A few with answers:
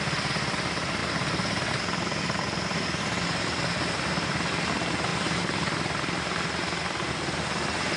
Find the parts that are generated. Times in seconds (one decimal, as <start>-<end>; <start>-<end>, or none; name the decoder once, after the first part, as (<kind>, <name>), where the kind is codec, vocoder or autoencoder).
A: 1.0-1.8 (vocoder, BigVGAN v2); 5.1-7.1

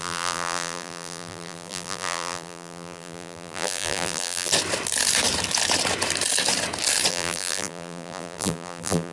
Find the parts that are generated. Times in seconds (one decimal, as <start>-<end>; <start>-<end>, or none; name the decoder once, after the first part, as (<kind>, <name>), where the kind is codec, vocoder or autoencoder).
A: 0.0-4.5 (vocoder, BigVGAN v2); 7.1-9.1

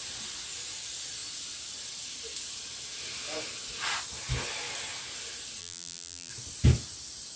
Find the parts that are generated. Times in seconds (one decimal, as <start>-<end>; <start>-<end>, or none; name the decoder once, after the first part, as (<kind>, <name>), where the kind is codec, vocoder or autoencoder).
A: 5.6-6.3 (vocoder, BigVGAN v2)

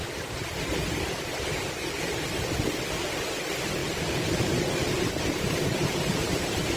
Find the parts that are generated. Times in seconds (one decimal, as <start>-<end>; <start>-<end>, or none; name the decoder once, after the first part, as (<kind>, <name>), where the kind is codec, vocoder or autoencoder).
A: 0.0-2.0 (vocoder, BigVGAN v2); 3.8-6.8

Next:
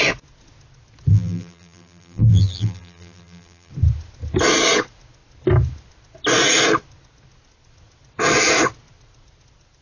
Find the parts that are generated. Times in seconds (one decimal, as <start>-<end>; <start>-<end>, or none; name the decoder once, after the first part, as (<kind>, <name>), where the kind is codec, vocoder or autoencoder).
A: 1.1-3.7 (vocoder, BigVGAN v2)

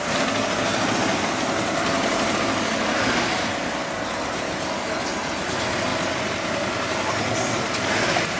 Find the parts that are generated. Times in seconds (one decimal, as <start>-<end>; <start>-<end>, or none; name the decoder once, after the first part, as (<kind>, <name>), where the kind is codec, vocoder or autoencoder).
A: 0.7-3.8 (vocoder, BigVGAN v2); 5.9-7.9

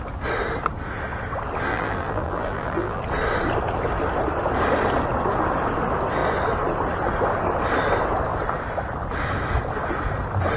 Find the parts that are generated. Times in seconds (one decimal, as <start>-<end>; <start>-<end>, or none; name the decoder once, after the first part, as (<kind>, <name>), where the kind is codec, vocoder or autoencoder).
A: 1.7-3.0 (vocoder, BigVGAN v2)